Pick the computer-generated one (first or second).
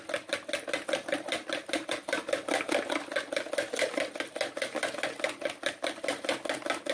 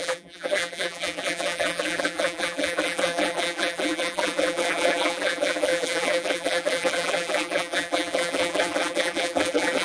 second